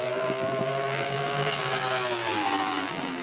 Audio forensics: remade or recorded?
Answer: remade